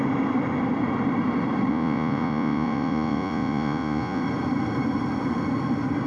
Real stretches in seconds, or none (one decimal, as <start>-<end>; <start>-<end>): 0.0-1.7; 4.2-6.1